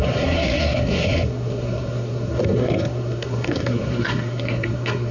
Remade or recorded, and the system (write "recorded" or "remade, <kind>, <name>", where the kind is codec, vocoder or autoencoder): remade, codec, SNAC